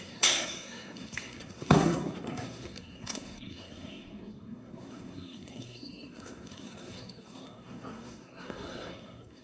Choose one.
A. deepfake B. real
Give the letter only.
A